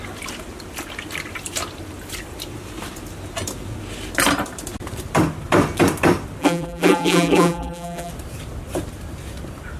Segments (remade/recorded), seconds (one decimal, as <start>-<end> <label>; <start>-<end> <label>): 0.0-6.4 recorded; 6.4-8.1 remade; 8.1-9.8 recorded

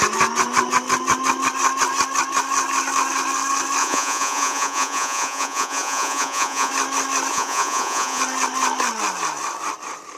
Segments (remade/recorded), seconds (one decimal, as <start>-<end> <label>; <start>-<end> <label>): 0.0-3.8 recorded; 3.8-6.7 remade; 6.7-7.3 recorded; 7.3-8.2 remade; 8.2-10.2 recorded

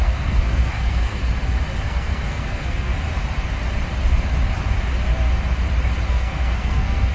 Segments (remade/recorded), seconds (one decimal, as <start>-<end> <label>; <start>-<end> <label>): 0.0-1.2 remade; 1.2-1.8 recorded; 1.8-2.9 remade; 2.9-6.1 recorded; 6.1-7.1 remade

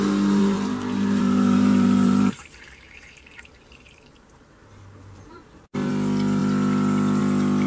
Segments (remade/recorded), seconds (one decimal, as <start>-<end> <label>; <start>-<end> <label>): 0.0-0.4 recorded; 0.4-4.1 remade; 4.1-4.6 recorded; 4.6-5.9 remade; 5.9-7.7 recorded

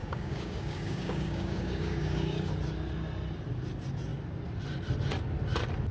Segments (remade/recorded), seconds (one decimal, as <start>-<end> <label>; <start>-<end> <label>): 0.0-2.5 remade; 2.5-5.9 recorded

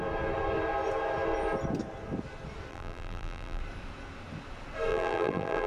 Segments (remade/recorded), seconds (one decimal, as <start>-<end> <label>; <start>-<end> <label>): 0.0-2.7 recorded; 2.7-3.6 remade; 3.6-4.9 recorded; 4.9-5.7 remade

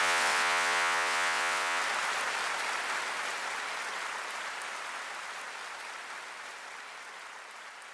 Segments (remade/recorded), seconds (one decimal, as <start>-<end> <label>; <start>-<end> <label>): 0.0-1.8 remade; 1.8-7.9 recorded